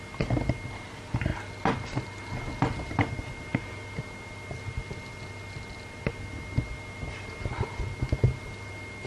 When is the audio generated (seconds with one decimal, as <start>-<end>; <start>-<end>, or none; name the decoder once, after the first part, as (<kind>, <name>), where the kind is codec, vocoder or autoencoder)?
none